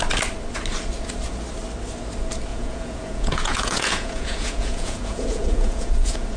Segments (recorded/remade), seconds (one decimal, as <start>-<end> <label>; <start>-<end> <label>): 0.0-2.5 recorded; 2.5-6.4 remade